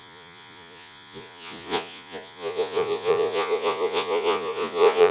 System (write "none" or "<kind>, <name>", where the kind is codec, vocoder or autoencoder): vocoder, Vocos